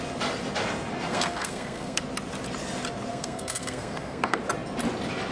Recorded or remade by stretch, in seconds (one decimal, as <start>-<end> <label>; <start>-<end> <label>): 0.0-1.1 recorded; 1.1-2.0 remade; 2.0-3.1 recorded; 3.1-4.4 remade; 4.4-5.3 recorded

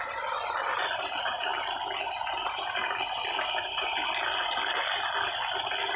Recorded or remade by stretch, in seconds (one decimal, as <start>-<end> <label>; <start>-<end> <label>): 0.0-6.0 recorded